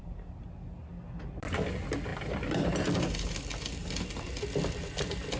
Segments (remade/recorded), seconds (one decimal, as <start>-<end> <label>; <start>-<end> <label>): 0.0-5.4 recorded